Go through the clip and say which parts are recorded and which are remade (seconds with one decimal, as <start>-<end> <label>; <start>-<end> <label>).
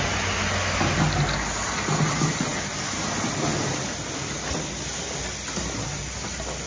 0.0-6.7 recorded